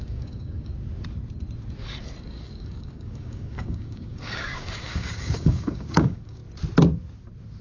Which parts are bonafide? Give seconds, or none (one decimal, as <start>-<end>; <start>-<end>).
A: 0.7-2.2; 6.4-7.6